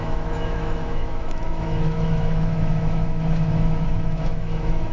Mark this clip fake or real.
fake